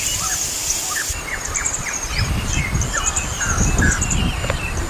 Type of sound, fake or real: real